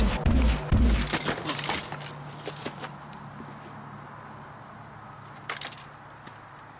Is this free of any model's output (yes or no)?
yes